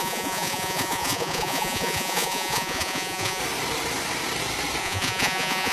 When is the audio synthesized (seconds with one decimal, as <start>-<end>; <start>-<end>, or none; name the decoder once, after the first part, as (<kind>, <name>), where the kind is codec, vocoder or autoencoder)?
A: 0.0-3.4 (vocoder, Vocos); 4.8-5.7